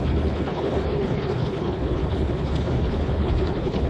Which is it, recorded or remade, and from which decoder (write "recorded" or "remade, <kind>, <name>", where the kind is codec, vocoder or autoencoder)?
remade, codec, HILCodec